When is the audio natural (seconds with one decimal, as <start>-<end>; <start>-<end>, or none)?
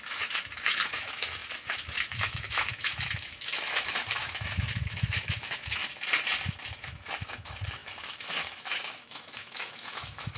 5.8-6.6